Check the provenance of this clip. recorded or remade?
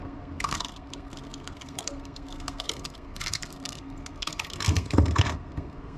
remade